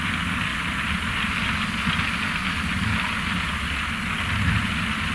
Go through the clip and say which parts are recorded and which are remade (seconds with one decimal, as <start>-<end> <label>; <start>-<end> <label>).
0.0-5.1 recorded